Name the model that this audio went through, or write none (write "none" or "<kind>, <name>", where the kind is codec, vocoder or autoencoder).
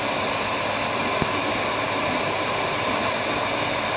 none